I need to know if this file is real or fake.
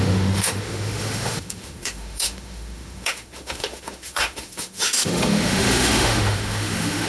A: fake